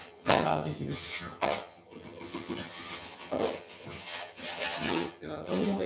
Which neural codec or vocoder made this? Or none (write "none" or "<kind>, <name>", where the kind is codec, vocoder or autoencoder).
vocoder, HiFi-GAN